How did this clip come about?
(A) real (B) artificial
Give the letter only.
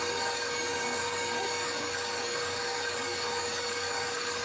B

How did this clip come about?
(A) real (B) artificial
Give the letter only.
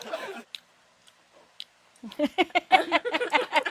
A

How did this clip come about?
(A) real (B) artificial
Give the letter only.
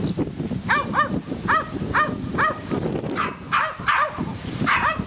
A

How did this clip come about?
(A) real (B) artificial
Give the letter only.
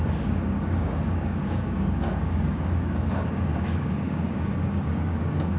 B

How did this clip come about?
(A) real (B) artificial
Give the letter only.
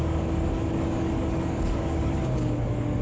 B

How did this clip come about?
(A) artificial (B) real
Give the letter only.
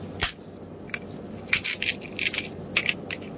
B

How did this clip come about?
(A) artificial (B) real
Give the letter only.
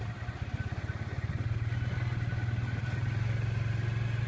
B